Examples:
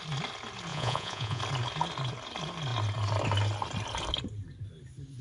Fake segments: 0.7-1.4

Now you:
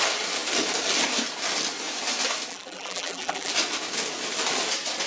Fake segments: 2.5-3.5

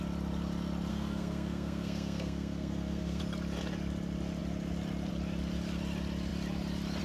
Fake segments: 0.9-3.2